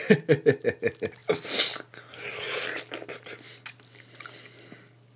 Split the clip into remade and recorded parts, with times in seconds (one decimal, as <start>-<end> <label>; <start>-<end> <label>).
0.0-5.2 recorded